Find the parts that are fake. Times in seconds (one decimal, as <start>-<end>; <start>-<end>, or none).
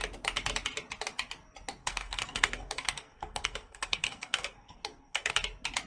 1.8-5.3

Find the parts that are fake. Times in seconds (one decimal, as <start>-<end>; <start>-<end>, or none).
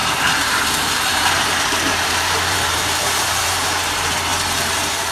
0.0-4.3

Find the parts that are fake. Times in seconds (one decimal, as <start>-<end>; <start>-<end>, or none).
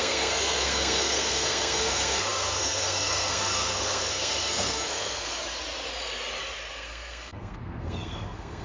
0.0-5.4; 6.7-8.6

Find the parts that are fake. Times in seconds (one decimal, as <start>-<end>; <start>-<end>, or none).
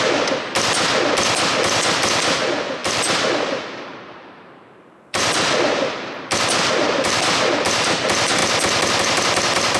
2.8-7.2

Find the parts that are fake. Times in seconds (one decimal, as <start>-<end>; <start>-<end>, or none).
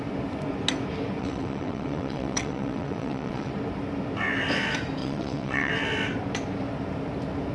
1.2-3.5; 5.0-5.7